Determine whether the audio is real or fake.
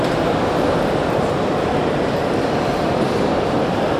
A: fake